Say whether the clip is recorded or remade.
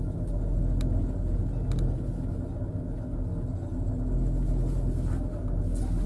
recorded